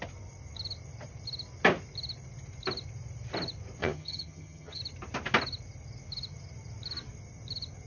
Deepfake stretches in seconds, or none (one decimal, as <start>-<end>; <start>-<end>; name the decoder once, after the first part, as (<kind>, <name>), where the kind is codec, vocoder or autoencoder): 3.8-4.8 (vocoder, HiFi-GAN)